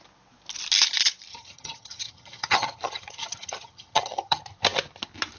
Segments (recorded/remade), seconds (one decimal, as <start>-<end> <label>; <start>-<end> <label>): 0.0-1.3 recorded; 1.3-4.4 remade; 4.4-5.4 recorded